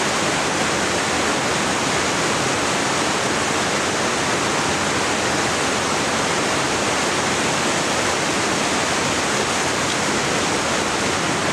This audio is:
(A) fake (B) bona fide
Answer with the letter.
B